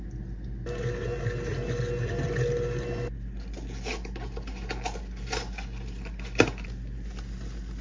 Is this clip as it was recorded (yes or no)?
yes